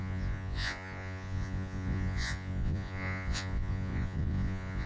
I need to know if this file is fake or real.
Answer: fake